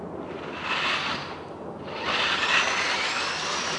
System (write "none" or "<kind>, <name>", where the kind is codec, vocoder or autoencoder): none